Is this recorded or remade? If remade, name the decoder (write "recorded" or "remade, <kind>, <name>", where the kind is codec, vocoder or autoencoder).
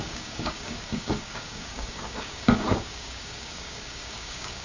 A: remade, codec, DAC